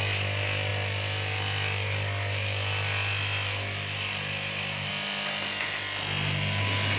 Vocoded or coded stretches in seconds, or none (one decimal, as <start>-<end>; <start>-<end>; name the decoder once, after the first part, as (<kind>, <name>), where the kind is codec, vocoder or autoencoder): none